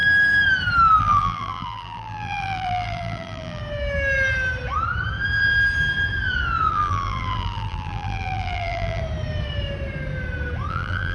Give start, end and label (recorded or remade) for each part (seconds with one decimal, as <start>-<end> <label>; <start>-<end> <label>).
0.0-1.0 recorded; 1.0-3.6 remade; 3.6-6.7 recorded; 6.7-9.0 remade; 9.0-10.7 recorded; 10.7-11.1 remade